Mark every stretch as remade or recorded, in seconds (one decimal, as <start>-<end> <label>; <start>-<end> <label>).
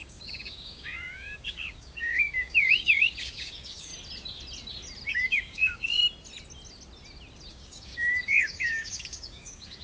0.0-3.9 remade; 3.9-5.1 recorded; 5.1-6.0 remade; 6.0-7.5 recorded; 7.5-9.8 remade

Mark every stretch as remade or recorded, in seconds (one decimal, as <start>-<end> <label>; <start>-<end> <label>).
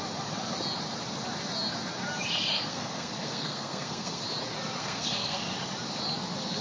0.0-2.5 recorded; 2.5-4.2 remade; 4.2-4.8 recorded; 4.8-5.4 remade; 5.4-6.6 recorded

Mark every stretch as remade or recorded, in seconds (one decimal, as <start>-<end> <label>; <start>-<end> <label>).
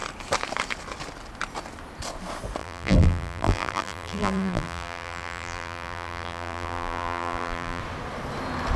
0.0-2.6 recorded; 2.6-7.8 remade; 7.8-8.8 recorded